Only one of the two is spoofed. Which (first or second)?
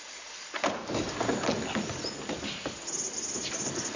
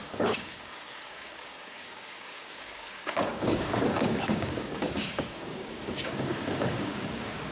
second